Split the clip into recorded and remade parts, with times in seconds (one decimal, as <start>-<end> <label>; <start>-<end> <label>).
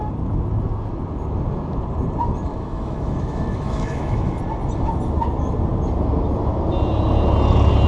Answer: 0.0-2.5 recorded; 2.5-4.4 remade; 4.4-7.9 recorded